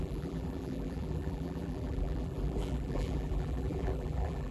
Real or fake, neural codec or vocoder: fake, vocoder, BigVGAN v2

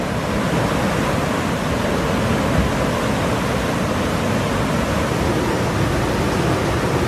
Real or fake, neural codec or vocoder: real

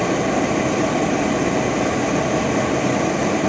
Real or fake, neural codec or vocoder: real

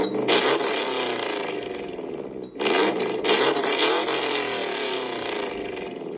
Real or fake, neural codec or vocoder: real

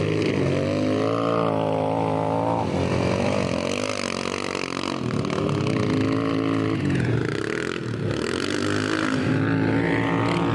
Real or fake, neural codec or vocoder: real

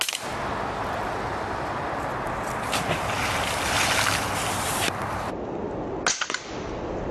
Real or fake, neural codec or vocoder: real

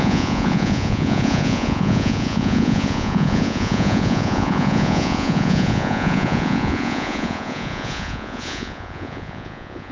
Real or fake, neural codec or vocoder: fake, vocoder, Vocos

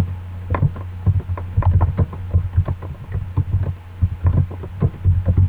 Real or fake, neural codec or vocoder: real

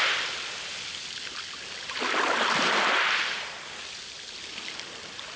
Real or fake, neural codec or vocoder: real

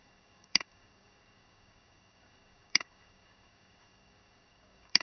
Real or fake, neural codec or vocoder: fake, codec, DAC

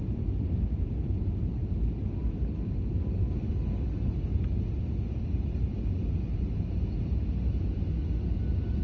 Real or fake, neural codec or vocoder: real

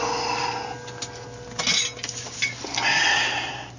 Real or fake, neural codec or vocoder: real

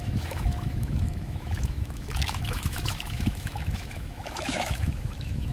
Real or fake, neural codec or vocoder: fake, autoencoder, DAC-VAE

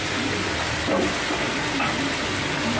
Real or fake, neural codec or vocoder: real